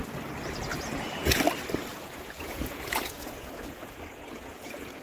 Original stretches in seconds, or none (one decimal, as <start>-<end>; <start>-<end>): 0.0-0.7; 1.4-1.9